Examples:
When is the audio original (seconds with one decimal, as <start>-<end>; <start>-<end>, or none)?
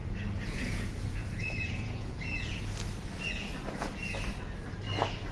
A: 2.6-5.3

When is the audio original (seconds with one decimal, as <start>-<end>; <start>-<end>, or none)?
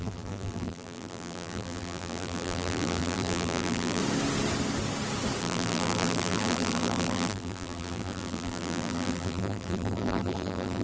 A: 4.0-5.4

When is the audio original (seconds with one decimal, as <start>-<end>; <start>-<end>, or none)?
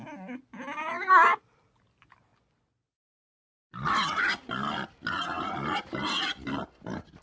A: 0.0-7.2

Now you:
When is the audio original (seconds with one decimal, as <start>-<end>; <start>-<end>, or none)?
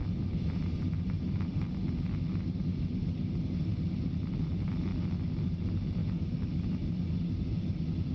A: 0.6-6.0; 6.6-8.1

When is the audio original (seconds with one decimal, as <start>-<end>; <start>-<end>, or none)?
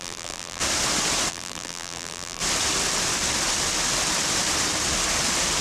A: 0.6-1.3; 2.4-5.6